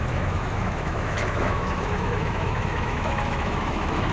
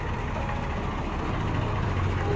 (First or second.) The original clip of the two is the second